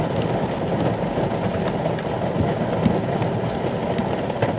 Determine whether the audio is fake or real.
real